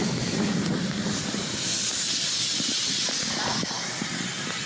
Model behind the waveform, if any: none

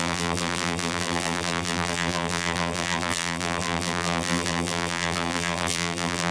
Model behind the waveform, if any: vocoder, BigVGAN v2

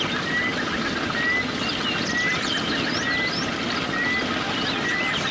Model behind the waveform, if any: none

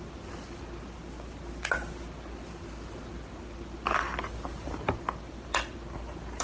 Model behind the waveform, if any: none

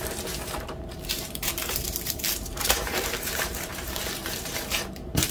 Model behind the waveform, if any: vocoder, BigVGAN v2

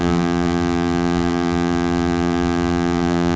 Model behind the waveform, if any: vocoder, BigVGAN v2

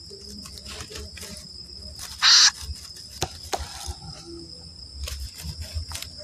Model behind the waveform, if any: none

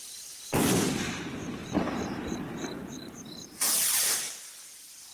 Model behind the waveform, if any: vocoder, BigVGAN v2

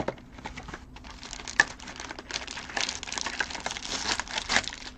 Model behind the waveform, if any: none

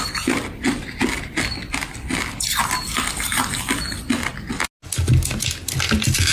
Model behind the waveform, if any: none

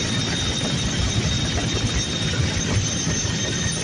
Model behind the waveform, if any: vocoder, BigVGAN v2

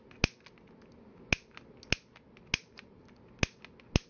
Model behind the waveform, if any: none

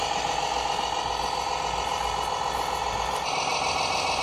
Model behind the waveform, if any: none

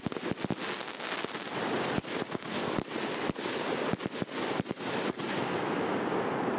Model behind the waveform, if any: none